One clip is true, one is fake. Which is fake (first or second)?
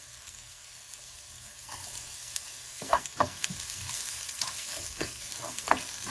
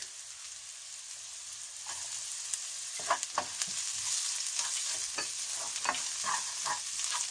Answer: first